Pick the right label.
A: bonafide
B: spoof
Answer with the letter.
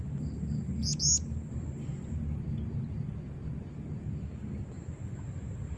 A